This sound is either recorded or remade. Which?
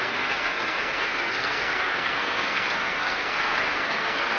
remade